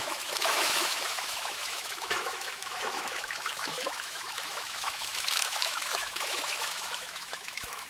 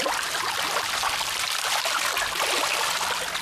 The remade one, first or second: first